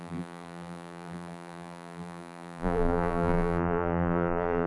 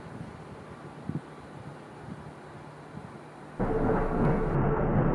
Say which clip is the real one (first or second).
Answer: second